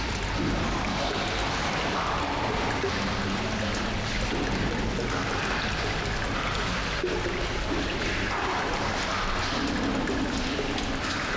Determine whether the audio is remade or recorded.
recorded